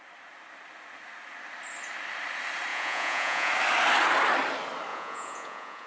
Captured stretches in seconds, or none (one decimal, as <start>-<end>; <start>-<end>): 0.0-2.7; 3.5-4.9